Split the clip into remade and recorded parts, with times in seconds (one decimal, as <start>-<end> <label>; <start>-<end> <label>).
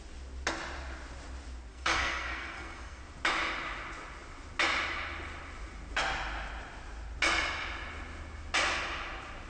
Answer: 0.0-1.7 recorded; 1.7-3.0 remade; 3.0-9.5 recorded